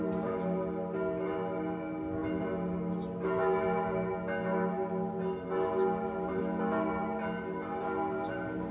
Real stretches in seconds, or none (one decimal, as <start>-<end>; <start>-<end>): 0.0-8.7